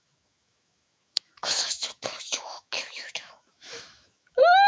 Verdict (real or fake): fake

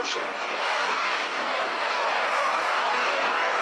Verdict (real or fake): fake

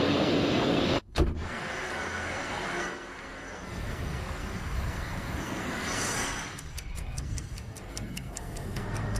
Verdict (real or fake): fake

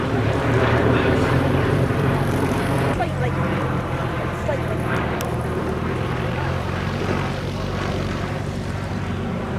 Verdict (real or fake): fake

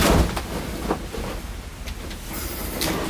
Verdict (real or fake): real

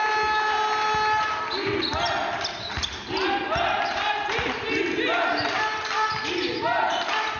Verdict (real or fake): real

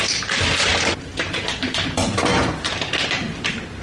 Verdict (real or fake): real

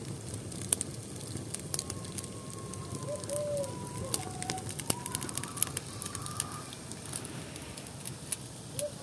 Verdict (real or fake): real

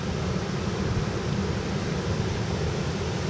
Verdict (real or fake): real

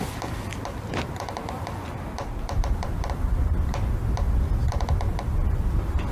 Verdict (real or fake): real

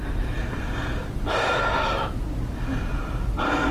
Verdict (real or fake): fake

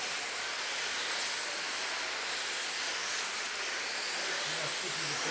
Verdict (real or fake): real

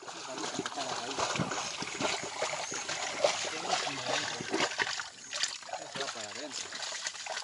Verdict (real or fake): real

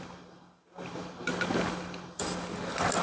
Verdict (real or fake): real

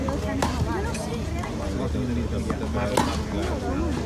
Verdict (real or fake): real